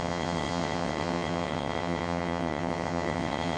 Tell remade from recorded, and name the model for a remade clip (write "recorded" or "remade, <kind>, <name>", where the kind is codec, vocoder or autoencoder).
remade, vocoder, WaveNeXt